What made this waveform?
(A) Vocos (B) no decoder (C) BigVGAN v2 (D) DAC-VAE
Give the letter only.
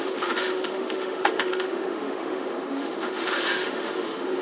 D